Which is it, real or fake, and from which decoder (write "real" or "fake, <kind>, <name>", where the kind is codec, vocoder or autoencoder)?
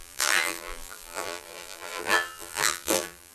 fake, vocoder, BigVGAN v2